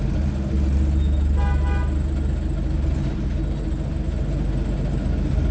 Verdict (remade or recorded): recorded